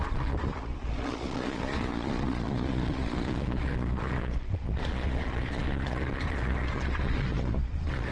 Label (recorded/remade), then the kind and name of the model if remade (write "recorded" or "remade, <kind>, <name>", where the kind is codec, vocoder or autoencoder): remade, vocoder, Vocos